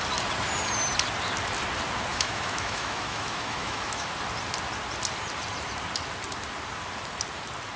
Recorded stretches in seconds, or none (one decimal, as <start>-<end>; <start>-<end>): 0.0-2.1; 4.1-7.8